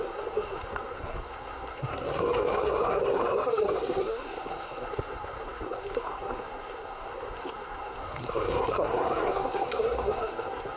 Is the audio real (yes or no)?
no